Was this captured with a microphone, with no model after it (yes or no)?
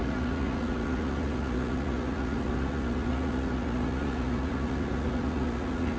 no